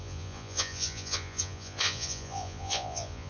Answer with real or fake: fake